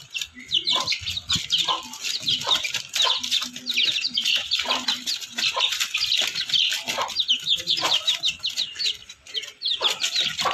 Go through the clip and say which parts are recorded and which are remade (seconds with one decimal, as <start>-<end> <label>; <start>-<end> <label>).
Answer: 0.0-3.9 recorded; 3.9-5.6 remade; 5.6-7.3 recorded; 7.3-8.2 remade; 8.2-9.0 recorded; 9.0-10.0 remade; 10.0-10.5 recorded